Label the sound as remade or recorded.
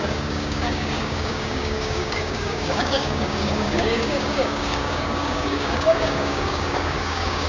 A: remade